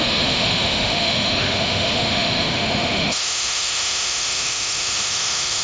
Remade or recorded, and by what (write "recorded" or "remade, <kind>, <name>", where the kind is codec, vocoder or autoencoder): remade, autoencoder, DAC-VAE